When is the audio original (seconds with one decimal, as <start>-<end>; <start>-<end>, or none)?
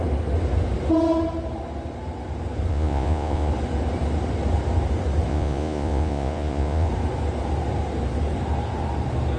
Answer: 0.0-2.7; 3.5-5.3; 6.9-9.4